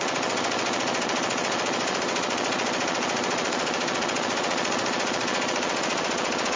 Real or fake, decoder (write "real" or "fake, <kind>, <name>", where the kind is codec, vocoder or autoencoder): fake, vocoder, Vocos